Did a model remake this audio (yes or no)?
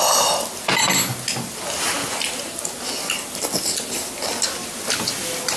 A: no